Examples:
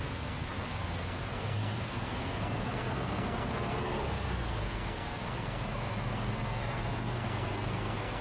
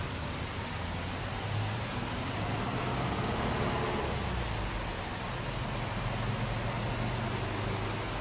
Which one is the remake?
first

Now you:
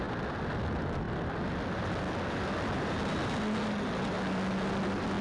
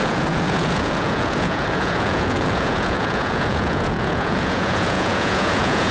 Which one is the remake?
second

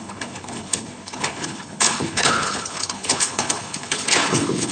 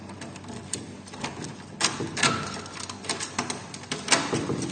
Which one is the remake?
first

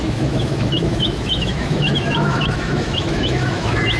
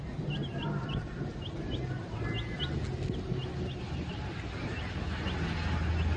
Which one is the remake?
first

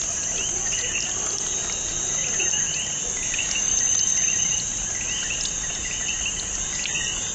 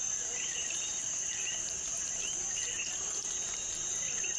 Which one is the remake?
second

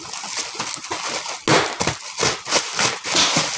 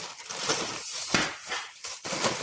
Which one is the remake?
second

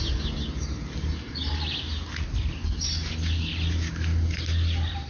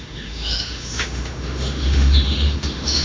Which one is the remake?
second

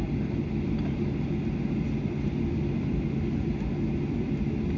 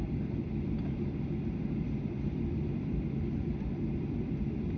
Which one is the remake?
second